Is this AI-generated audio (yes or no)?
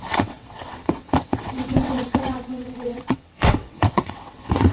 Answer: yes